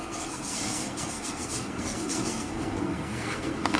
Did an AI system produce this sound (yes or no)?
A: yes